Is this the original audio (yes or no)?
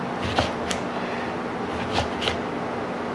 yes